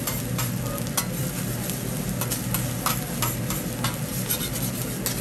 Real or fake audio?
real